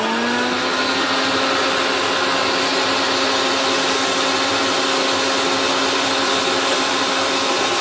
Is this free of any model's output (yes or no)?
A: yes